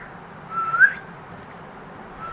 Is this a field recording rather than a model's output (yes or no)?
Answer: yes